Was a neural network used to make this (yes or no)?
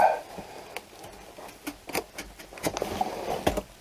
no